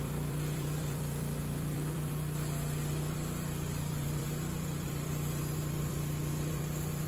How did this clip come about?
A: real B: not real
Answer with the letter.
B